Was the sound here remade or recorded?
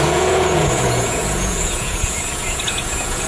remade